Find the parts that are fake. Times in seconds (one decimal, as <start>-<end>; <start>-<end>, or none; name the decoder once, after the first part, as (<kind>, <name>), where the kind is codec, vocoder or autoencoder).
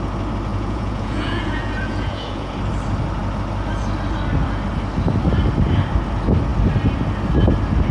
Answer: 0.5-2.5 (vocoder, Vocos)